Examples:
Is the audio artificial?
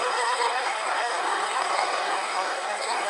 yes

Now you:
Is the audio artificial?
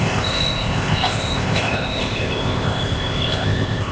yes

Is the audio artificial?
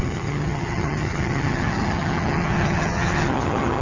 yes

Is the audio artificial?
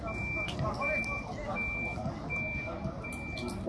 no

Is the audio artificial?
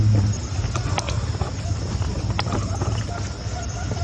no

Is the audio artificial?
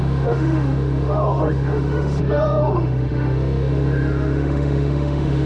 yes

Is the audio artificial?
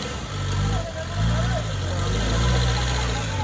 no